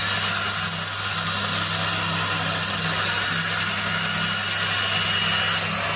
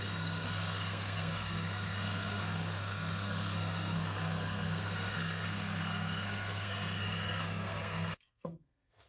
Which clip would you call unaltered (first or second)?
first